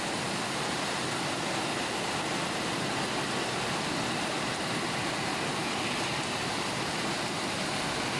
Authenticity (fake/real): real